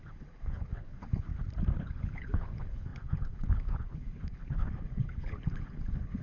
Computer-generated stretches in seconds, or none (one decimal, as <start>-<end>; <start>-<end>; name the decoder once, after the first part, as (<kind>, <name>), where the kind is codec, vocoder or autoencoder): 0.0-1.3 (codec, HILCodec); 1.8-6.2